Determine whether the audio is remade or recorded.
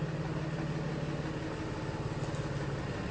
recorded